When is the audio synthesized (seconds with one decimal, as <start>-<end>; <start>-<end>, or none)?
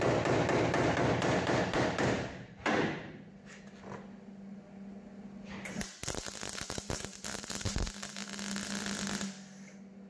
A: none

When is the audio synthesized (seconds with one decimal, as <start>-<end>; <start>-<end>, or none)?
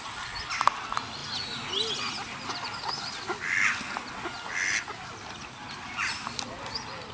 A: none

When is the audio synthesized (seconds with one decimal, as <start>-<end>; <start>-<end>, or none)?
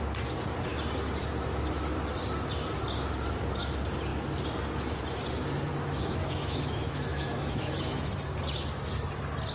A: 5.7-8.1